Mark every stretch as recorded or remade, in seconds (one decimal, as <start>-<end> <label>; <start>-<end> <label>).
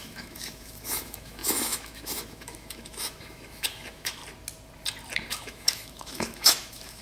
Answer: 0.0-4.2 remade; 4.2-5.3 recorded; 5.3-7.0 remade